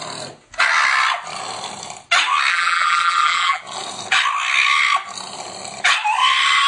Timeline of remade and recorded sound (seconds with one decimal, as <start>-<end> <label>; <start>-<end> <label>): 0.0-2.5 recorded; 2.5-3.6 remade; 3.6-6.7 recorded